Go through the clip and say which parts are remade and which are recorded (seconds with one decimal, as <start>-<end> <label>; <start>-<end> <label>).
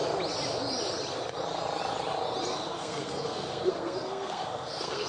0.0-2.5 recorded; 2.5-5.1 remade